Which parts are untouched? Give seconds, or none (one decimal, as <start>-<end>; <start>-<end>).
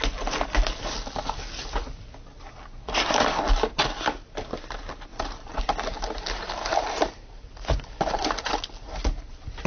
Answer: 0.0-5.1; 5.6-6.7; 8.4-9.7